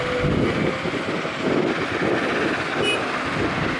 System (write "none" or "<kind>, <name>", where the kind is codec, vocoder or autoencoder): none